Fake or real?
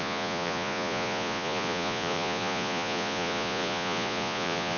fake